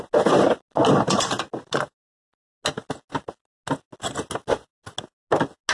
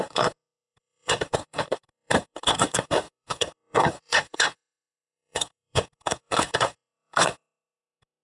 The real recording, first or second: first